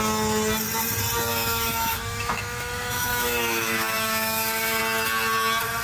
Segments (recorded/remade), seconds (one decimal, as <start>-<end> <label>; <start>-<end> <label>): 0.0-1.3 recorded; 1.3-4.8 remade; 4.8-5.8 recorded